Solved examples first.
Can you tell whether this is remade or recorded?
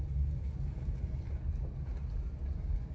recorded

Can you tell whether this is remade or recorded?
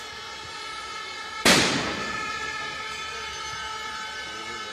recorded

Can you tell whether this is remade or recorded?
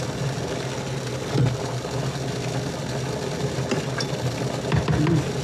recorded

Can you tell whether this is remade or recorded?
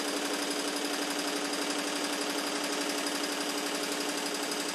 recorded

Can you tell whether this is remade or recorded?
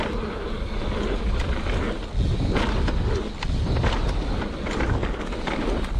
recorded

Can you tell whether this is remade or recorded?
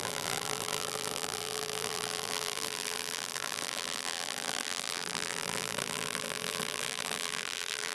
remade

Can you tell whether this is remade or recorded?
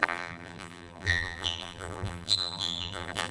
remade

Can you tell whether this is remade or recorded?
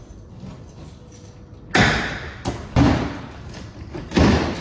recorded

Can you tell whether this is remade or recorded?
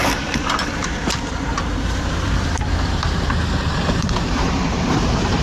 remade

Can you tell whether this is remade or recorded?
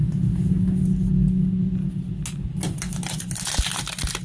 recorded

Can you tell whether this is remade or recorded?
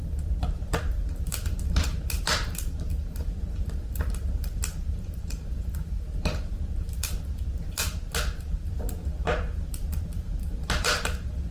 remade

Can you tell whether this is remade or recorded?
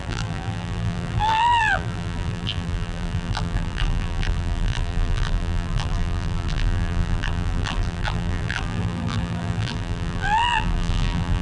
remade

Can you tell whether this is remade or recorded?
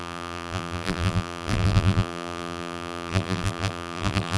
remade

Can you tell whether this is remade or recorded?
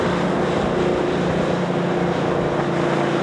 recorded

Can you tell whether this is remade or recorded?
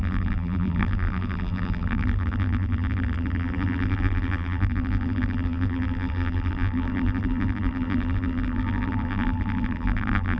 remade